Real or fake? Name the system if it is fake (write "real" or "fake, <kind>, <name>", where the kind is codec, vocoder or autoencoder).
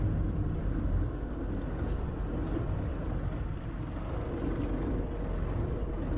real